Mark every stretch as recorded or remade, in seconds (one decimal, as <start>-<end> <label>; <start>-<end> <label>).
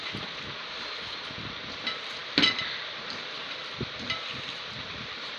0.0-5.4 recorded